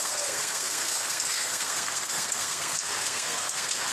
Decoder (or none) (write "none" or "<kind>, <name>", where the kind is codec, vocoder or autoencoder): codec, SNAC